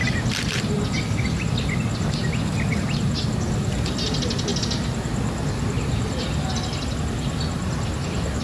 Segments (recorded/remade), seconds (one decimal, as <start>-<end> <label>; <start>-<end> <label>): 0.0-8.4 recorded